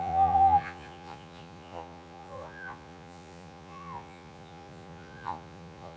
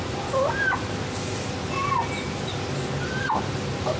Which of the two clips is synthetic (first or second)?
first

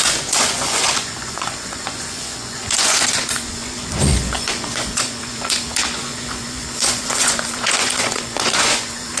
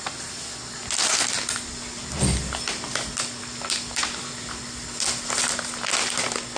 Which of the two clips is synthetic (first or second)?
first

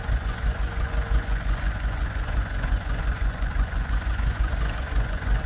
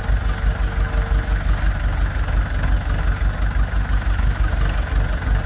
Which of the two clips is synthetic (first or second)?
first